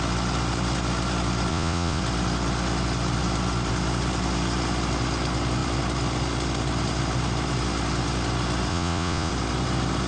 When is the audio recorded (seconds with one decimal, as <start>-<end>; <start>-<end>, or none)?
0.0-1.5; 2.0-8.7; 9.3-10.1